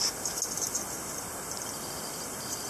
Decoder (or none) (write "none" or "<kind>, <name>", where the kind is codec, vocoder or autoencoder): none